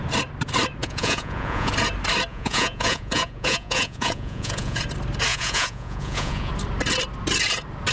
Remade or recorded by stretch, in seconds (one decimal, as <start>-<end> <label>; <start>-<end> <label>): 0.0-0.8 recorded; 0.8-1.7 remade; 1.7-2.3 recorded; 2.3-4.8 remade; 4.8-5.3 recorded; 5.3-6.5 remade; 6.5-7.9 recorded

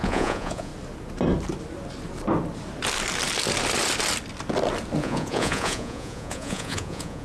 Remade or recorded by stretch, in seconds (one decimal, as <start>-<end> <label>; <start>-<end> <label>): 0.0-0.7 remade; 0.7-5.0 recorded; 5.0-7.2 remade

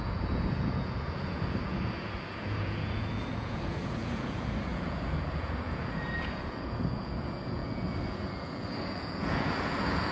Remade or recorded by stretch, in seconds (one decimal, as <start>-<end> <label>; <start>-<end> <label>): 0.0-10.1 remade